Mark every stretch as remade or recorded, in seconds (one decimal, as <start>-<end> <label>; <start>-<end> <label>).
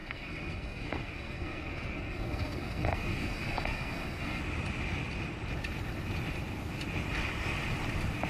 0.0-4.4 remade; 4.4-8.3 recorded